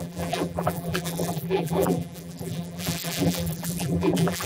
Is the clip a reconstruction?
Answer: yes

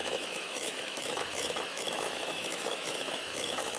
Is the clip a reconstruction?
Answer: yes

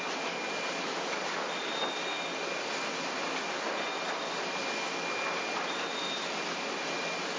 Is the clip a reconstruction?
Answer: no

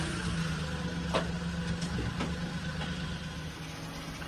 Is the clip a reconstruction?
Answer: no